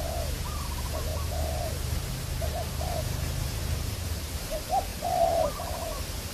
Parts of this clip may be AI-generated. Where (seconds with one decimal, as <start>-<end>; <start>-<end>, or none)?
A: 1.1-4.5; 4.9-5.5